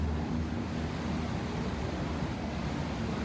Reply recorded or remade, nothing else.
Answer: recorded